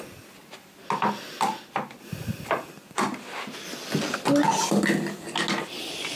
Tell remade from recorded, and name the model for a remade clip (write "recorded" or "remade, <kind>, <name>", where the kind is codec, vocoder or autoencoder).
recorded